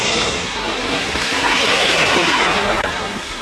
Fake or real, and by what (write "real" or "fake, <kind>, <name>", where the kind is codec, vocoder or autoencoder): fake, codec, SNAC